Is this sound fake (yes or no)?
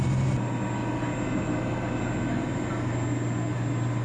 no